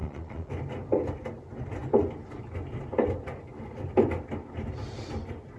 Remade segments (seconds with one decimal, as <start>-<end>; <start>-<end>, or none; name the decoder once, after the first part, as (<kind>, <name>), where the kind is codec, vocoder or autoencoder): 0.0-0.5 (vocoder, Vocos)